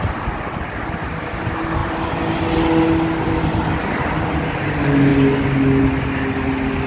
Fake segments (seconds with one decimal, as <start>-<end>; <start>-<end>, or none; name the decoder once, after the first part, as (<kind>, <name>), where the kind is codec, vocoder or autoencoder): none

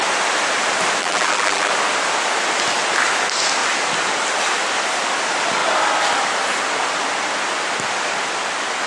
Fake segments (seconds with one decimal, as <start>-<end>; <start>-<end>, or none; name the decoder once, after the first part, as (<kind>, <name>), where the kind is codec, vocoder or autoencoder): 1.0-1.7 (vocoder, BigVGAN v2)

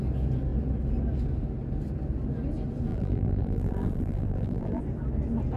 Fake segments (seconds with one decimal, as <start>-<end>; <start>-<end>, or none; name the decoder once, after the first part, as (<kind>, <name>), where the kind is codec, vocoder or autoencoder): 2.9-4.8 (vocoder, BigVGAN v2)